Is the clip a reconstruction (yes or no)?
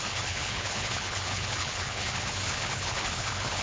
yes